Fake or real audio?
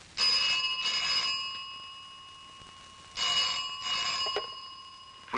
real